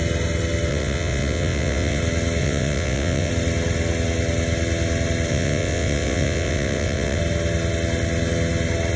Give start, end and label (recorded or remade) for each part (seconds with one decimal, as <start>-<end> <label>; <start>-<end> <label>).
0.0-0.7 recorded; 0.7-2.0 remade; 2.0-2.4 recorded; 2.4-3.3 remade; 3.3-5.3 recorded; 5.3-7.2 remade; 7.2-9.0 recorded

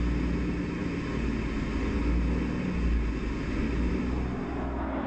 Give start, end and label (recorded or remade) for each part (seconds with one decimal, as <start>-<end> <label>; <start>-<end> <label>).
0.0-5.1 recorded

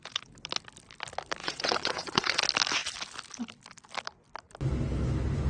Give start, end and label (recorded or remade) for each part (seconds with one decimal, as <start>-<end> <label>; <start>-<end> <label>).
0.0-1.4 recorded; 1.4-2.4 remade; 2.4-5.5 recorded

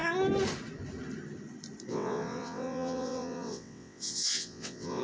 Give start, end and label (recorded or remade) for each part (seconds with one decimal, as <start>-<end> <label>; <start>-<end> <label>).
0.0-1.9 recorded; 1.9-5.0 remade

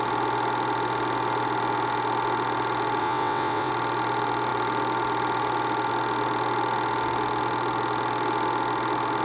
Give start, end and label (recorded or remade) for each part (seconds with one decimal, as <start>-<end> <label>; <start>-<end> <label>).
0.0-3.0 recorded; 3.0-3.7 remade; 3.7-9.2 recorded

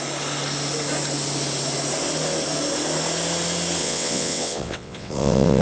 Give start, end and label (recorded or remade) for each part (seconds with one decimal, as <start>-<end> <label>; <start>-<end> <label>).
0.0-3.8 recorded; 3.8-5.6 remade

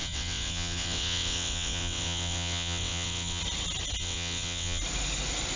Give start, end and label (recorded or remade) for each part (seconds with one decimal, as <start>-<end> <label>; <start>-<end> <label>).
0.0-3.4 remade; 3.4-4.0 recorded; 4.0-4.8 remade; 4.8-5.6 recorded

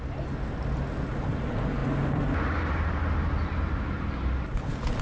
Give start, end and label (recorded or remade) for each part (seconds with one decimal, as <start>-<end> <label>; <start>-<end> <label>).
0.0-5.0 recorded